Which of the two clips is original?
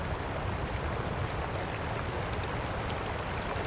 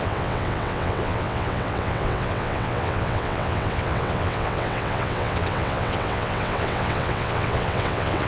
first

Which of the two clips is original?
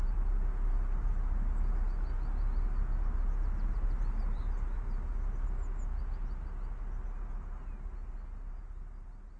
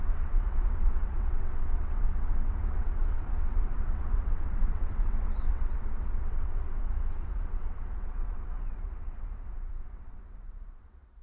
first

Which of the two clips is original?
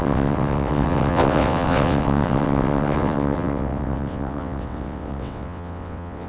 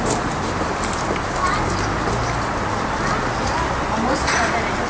second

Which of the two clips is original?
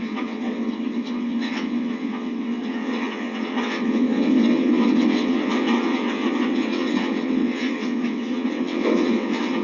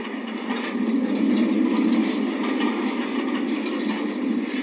second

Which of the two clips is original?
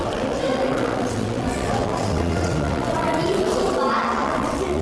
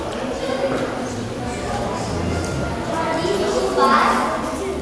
second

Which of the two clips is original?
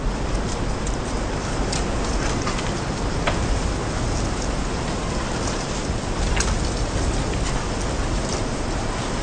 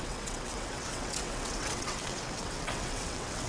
first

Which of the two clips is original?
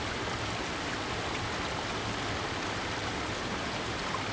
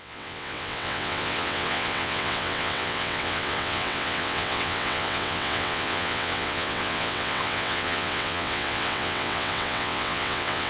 first